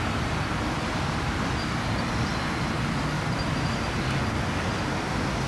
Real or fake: real